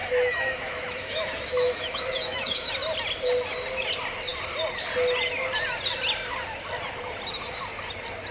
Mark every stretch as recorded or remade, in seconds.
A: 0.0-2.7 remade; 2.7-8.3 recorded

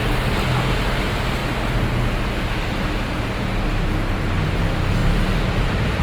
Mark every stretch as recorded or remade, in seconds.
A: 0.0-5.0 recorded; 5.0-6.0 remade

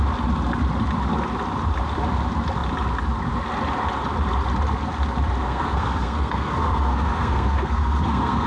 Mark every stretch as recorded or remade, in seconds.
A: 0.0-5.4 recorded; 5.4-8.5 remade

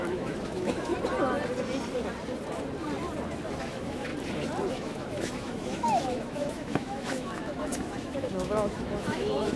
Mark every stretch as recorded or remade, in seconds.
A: 0.0-0.9 remade; 0.9-3.6 recorded; 3.6-4.1 remade; 4.1-4.7 recorded; 4.7-9.6 remade